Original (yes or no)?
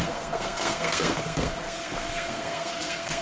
no